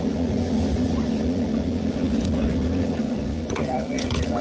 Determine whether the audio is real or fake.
fake